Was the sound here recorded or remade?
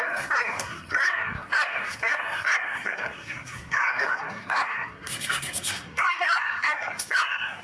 remade